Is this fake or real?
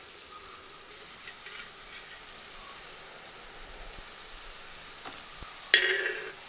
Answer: real